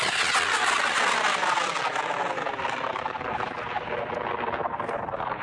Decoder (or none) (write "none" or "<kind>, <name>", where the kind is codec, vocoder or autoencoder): none